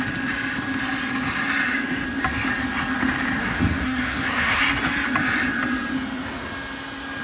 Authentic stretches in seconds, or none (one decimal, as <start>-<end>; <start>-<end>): 0.0-3.4; 4.6-7.2